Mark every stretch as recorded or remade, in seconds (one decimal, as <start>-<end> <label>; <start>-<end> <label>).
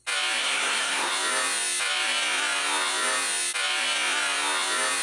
0.0-0.4 recorded; 0.4-1.1 remade; 1.1-5.0 recorded